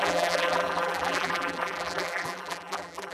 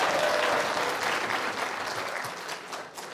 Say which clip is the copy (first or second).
first